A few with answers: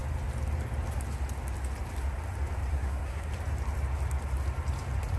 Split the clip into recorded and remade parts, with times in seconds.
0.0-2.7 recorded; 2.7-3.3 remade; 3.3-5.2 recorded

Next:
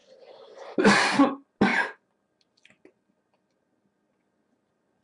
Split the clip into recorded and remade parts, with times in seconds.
0.0-5.0 recorded

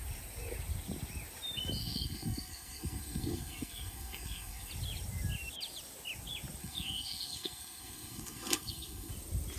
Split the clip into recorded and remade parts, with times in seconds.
0.0-1.8 recorded; 1.8-4.7 remade; 4.7-6.6 recorded; 6.6-9.1 remade; 9.1-9.6 recorded

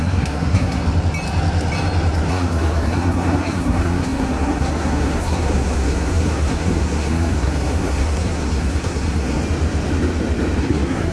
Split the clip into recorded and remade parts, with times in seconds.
0.0-0.8 remade; 0.8-2.3 recorded; 2.3-9.4 remade; 9.4-10.6 recorded; 10.6-11.1 remade